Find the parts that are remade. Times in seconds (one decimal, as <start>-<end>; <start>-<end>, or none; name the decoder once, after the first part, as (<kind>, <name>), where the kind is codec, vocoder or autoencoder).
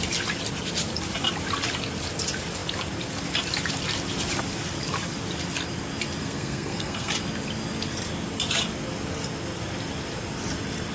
6.2-7.1 (codec, SNAC)